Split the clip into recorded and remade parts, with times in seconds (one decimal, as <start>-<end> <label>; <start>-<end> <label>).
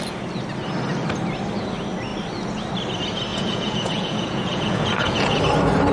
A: 0.0-3.3 recorded; 3.3-5.4 remade; 5.4-5.9 recorded